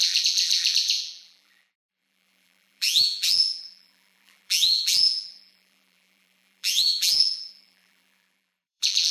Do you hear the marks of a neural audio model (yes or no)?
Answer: yes